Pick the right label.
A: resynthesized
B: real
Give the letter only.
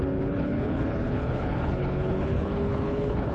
A